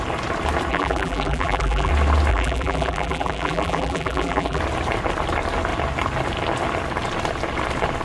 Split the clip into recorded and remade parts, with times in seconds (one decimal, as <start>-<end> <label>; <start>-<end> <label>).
0.0-0.7 recorded; 0.7-1.9 remade; 1.9-2.3 recorded; 2.3-4.6 remade; 4.6-8.0 recorded